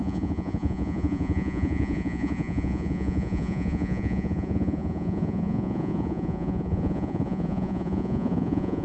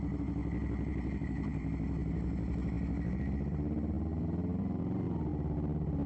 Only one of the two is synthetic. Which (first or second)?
first